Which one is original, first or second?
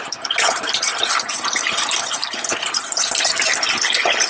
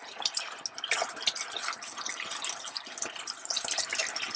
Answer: second